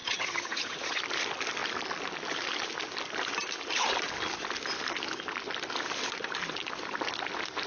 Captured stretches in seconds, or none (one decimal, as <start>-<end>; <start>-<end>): 1.0-7.7